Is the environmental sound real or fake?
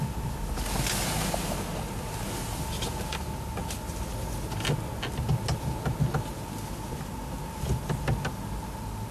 real